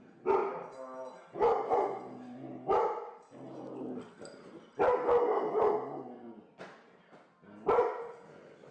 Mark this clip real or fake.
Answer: real